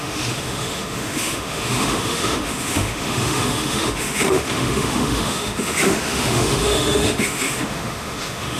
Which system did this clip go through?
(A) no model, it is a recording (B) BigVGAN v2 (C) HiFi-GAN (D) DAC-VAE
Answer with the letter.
D